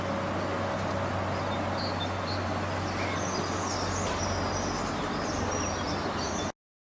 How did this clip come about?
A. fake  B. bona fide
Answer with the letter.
B